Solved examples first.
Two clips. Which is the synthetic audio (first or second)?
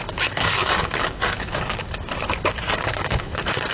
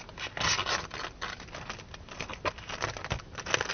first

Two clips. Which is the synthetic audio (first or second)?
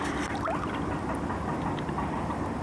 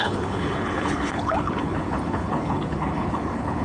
second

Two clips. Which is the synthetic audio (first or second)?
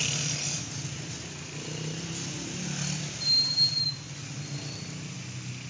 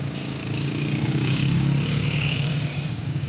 second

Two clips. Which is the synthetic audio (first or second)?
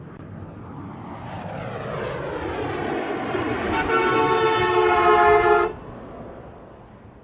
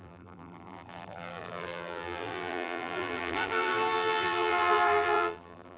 second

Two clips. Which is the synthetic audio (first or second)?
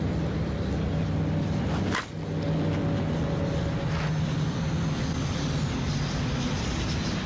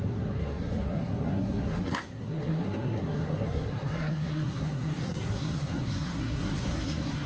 second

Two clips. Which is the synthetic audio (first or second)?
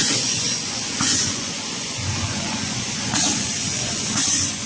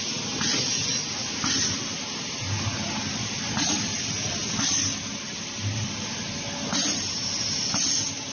first